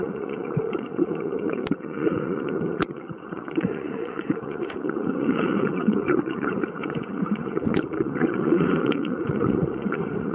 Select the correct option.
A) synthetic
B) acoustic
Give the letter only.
A